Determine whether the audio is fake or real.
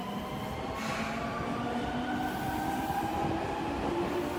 real